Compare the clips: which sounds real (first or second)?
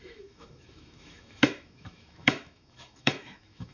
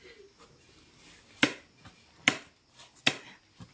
second